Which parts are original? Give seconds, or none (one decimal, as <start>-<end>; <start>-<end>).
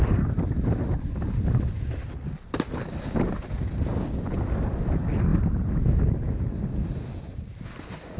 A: 0.0-8.2